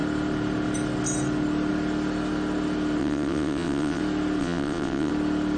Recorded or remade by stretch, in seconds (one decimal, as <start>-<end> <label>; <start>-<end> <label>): 0.0-3.0 recorded; 3.0-4.0 remade; 4.0-4.4 recorded; 4.4-5.1 remade; 5.1-5.6 recorded